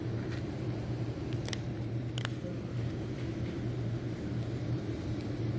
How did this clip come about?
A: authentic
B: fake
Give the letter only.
A